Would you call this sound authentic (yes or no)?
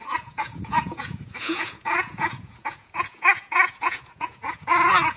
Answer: no